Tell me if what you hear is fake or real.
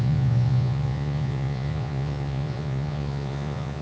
fake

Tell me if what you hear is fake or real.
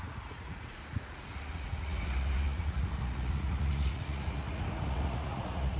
fake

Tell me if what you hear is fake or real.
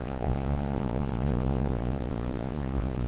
fake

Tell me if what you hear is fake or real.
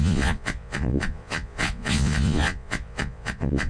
fake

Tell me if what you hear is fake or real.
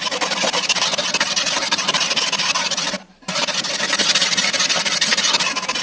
real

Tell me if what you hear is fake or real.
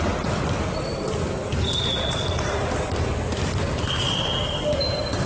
real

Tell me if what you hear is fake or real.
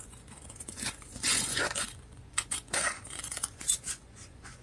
fake